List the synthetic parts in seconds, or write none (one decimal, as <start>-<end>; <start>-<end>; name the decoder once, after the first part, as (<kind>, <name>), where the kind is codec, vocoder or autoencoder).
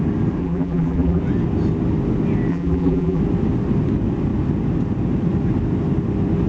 0.4-1.2 (vocoder, BigVGAN v2); 2.5-3.2